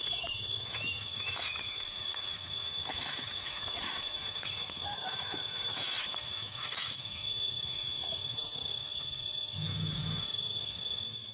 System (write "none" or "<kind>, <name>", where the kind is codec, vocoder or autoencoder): autoencoder, DAC-VAE